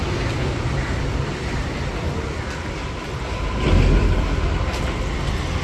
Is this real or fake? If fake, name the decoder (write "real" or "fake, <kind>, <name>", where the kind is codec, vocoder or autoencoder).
real